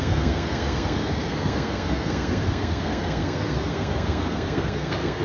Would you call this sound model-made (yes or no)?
yes